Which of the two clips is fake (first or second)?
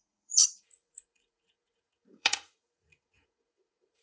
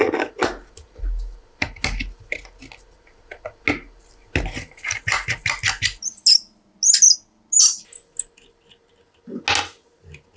first